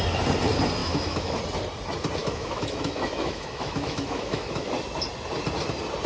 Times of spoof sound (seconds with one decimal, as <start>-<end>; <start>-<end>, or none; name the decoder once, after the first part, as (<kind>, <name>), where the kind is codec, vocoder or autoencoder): 0.8-1.4 (autoencoder, DAC-VAE); 2.2-4.7